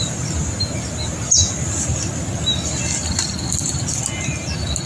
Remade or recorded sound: recorded